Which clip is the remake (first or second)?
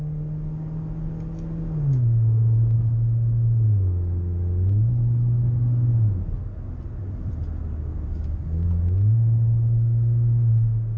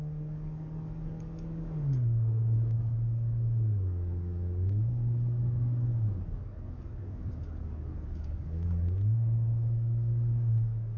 second